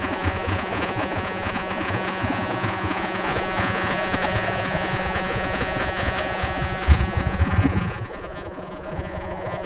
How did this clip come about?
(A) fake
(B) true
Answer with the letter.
A